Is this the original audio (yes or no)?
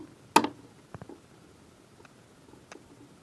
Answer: yes